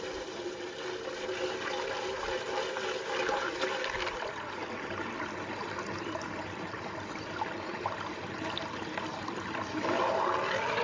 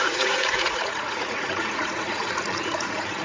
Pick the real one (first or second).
first